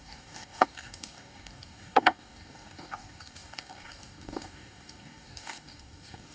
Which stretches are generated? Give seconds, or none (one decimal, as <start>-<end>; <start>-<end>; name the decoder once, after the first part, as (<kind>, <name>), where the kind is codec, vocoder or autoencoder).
0.0-6.3 (codec, DAC)